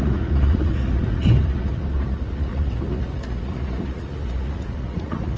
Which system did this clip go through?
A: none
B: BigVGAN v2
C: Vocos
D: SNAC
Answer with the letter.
C